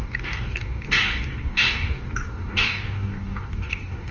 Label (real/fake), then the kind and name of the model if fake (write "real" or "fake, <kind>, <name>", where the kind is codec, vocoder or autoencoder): fake, codec, DAC